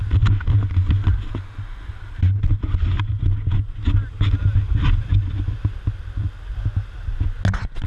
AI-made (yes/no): no